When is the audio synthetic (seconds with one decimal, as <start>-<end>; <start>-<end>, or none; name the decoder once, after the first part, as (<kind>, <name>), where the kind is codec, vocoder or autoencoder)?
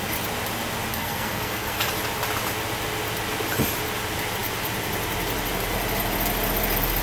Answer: 0.9-1.9 (codec, SNAC)